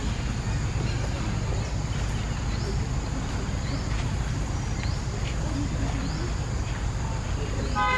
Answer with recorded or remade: recorded